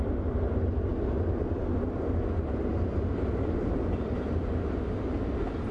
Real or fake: real